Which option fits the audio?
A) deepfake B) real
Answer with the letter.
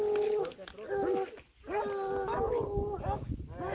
B